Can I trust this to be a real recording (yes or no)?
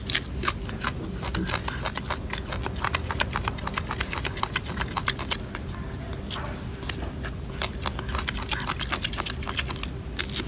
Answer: yes